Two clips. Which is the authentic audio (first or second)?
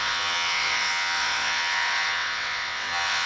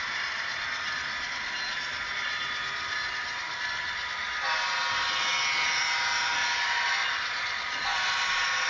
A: second